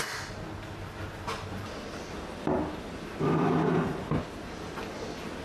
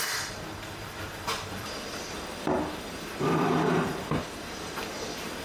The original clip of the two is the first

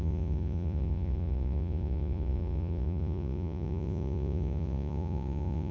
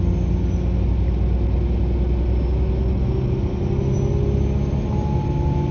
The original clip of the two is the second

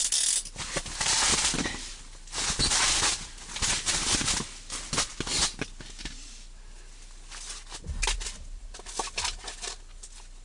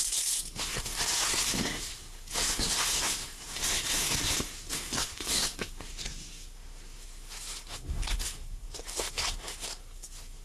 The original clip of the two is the first